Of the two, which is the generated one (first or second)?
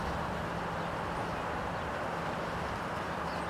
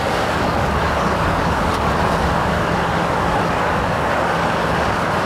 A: second